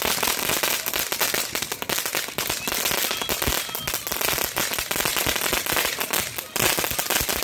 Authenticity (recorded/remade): recorded